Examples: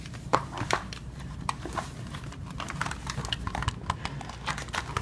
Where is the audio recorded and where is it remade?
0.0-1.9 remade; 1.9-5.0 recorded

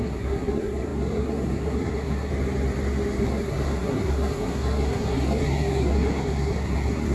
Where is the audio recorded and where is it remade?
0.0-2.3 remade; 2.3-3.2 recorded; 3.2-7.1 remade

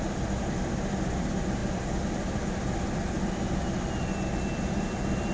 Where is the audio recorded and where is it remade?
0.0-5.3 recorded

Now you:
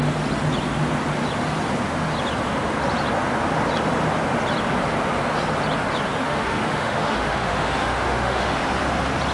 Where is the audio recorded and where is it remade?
0.0-6.2 recorded; 6.2-8.6 remade; 8.6-9.3 recorded

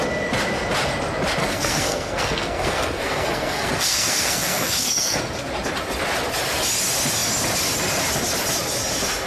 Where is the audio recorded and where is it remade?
0.0-1.4 recorded; 1.4-5.2 remade; 5.2-9.3 recorded

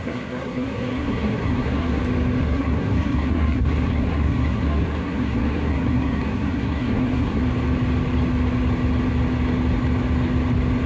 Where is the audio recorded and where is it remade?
0.0-2.0 remade; 2.0-2.4 recorded; 2.4-7.4 remade; 7.4-10.9 recorded